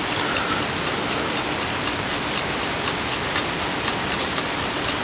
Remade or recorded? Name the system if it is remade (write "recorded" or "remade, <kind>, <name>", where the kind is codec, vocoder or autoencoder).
recorded